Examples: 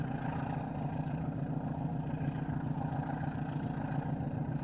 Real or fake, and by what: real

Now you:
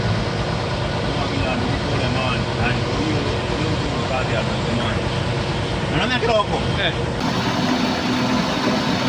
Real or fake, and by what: real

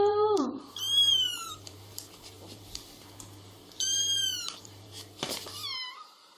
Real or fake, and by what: fake, vocoder, BigVGAN v2